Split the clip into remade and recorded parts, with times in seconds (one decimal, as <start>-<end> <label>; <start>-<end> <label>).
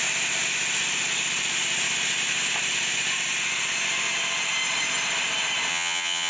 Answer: 0.0-5.7 recorded; 5.7-6.3 remade